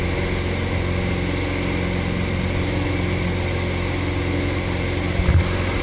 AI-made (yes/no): no